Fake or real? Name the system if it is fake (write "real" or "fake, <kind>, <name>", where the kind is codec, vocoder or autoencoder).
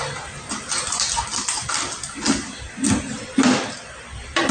real